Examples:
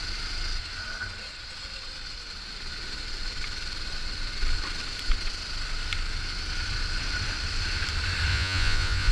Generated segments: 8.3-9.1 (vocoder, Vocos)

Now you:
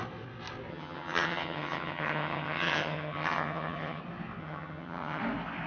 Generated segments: 0.7-4.0 (vocoder, HiFi-GAN); 4.4-5.2

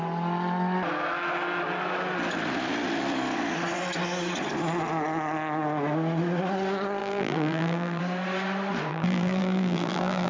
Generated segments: 7.0-8.0 (vocoder, BigVGAN v2); 8.9-10.3

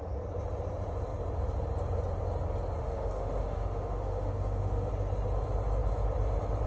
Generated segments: 2.8-4.9 (autoencoder, DAC-VAE)

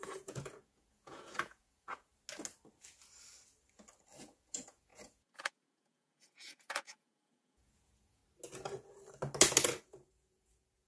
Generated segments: 0.0-2.1 (vocoder, Vocos); 4.2-8.2; 9.8-10.9

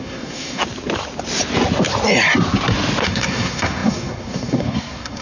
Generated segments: 0.0-0.6 (codec, SNAC); 3.0-5.2

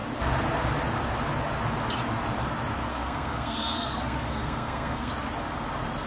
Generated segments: 2.9-5.1 (codec, SNAC)

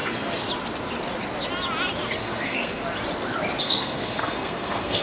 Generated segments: 2.2-2.8 (codec, SNAC); 3.6-5.0